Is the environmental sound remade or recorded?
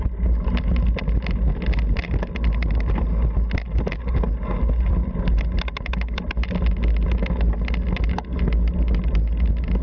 recorded